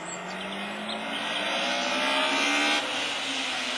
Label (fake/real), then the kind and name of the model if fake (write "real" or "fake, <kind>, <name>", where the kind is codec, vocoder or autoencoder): real